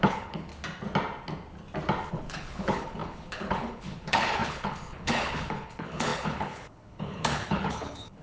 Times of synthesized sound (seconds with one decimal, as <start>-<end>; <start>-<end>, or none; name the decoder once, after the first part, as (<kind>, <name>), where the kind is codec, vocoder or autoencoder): 0.0-0.5 (codec, HILCodec); 2.1-8.2